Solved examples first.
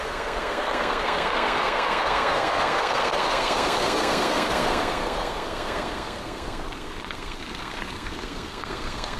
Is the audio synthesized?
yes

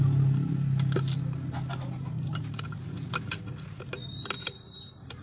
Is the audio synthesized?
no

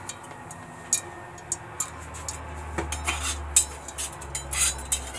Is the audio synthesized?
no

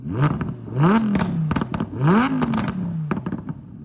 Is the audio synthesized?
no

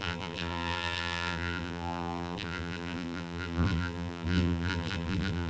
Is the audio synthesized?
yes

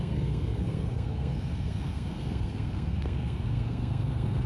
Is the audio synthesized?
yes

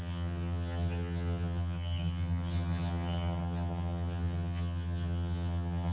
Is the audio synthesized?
yes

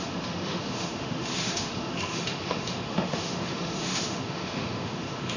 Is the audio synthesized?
yes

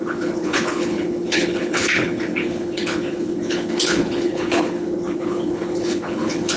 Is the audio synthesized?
yes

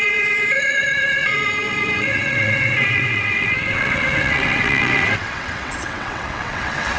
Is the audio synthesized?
yes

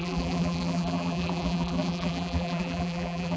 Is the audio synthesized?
yes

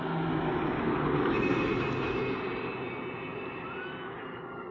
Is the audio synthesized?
no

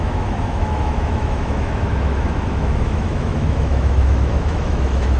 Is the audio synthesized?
yes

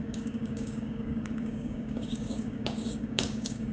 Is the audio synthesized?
yes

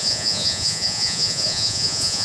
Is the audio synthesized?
yes